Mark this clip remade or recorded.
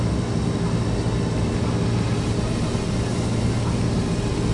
recorded